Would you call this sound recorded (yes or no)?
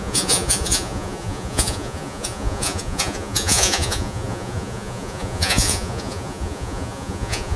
no